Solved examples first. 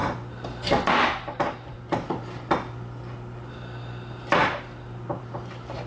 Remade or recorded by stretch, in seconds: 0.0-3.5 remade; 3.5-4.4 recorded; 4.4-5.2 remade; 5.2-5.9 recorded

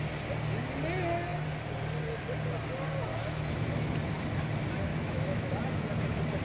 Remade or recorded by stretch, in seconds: 0.0-3.1 recorded; 3.1-3.9 remade; 3.9-4.9 recorded; 4.9-5.5 remade; 5.5-6.4 recorded

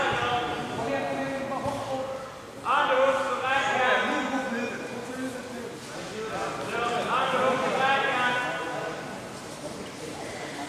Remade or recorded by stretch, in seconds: 0.0-8.9 recorded; 8.9-10.7 remade

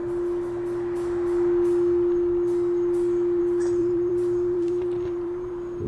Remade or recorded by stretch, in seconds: 0.0-3.8 recorded; 3.8-5.5 remade; 5.5-5.9 recorded

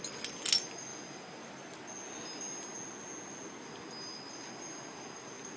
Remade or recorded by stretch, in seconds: 0.0-5.6 recorded

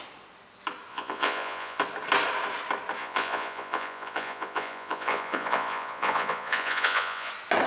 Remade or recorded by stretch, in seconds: 0.0-0.9 recorded; 0.9-1.8 remade; 1.8-3.0 recorded; 3.0-7.3 remade; 7.3-7.7 recorded

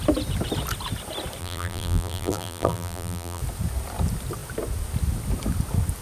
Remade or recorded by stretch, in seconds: 0.0-1.4 recorded; 1.4-3.4 remade; 3.4-6.0 recorded

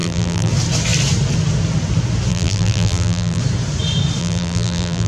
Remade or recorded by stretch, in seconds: 0.0-0.5 remade; 0.5-2.3 recorded; 2.3-3.4 remade; 3.4-4.2 recorded; 4.2-5.1 remade